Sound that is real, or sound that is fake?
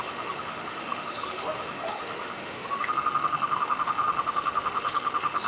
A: fake